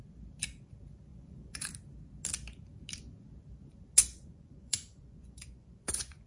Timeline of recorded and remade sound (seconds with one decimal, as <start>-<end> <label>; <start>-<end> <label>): 0.0-1.1 recorded; 1.1-1.7 remade; 1.7-4.0 recorded; 4.0-6.3 remade